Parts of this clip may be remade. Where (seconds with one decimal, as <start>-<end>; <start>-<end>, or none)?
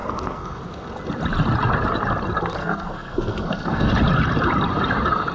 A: 0.0-0.6; 2.6-3.9